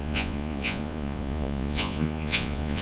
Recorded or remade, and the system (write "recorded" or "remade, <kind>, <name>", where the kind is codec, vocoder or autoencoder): remade, vocoder, Vocos